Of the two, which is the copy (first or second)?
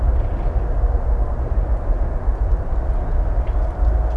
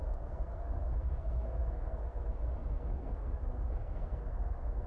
second